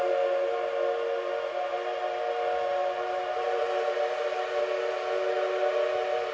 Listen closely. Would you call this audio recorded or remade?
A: recorded